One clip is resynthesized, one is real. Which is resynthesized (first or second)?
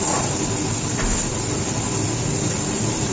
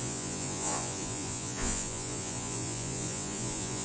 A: second